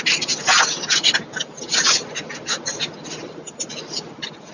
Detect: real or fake real